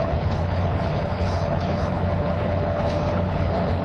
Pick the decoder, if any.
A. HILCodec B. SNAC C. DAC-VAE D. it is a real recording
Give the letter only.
A